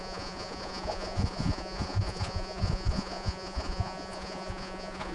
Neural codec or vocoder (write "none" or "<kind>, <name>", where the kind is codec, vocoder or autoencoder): vocoder, Vocos